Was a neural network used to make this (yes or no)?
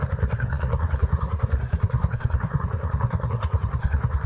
yes